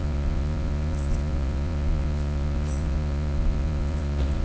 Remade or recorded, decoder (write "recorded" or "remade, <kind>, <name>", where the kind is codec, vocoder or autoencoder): remade, vocoder, Vocos